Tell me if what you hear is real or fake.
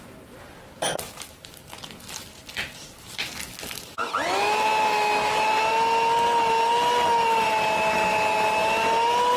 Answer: real